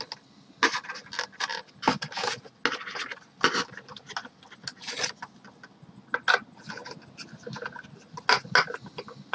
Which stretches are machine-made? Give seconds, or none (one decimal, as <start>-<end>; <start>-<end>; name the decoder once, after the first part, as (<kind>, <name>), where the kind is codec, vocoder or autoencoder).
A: none